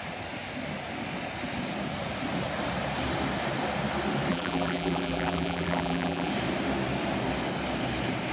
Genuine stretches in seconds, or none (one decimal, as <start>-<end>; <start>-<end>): 0.0-4.3; 6.3-8.3